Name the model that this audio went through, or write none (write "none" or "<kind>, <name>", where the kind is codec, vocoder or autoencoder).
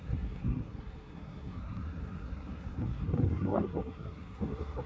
codec, SNAC